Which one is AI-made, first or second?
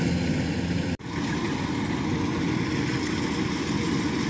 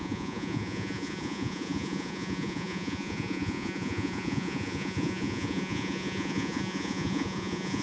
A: second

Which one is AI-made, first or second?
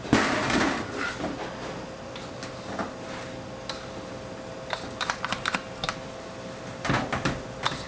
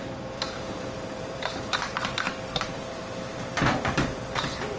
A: second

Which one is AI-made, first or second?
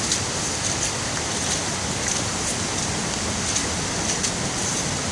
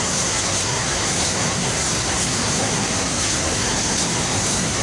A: second